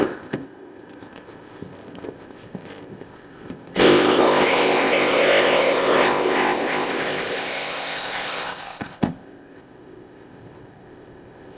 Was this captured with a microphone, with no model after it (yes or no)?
no